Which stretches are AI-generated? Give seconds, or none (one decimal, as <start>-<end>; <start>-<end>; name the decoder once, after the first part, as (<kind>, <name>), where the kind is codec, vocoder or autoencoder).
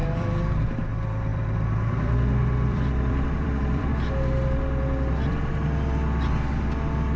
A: 0.0-0.9 (vocoder, BigVGAN v2); 1.3-3.9